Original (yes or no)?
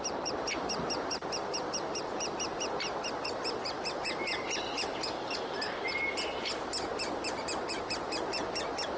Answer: no